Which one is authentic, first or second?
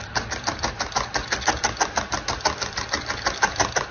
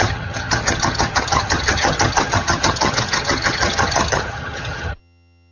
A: first